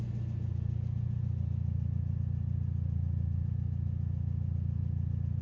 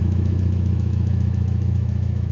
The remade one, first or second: second